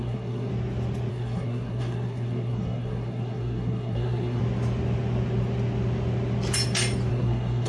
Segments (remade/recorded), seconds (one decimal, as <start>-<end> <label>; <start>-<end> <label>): 0.0-0.5 remade; 0.5-1.1 recorded; 1.1-4.4 remade; 4.4-7.1 recorded; 7.1-7.7 remade